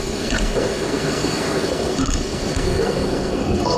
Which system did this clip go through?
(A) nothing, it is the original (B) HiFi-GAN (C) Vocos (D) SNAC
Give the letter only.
D